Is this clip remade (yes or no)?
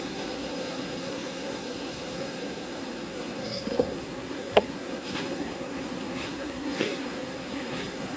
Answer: yes